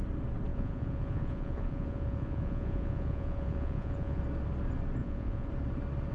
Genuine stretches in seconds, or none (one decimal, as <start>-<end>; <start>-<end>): 0.0-0.5; 4.2-5.0; 5.5-6.1